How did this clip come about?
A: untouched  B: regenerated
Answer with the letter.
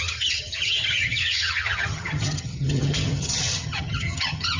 B